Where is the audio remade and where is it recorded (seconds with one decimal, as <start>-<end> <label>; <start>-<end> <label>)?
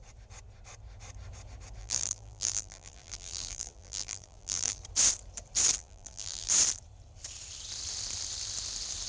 0.0-1.8 recorded; 1.8-4.8 remade; 4.8-5.8 recorded; 5.8-6.5 remade; 6.5-9.1 recorded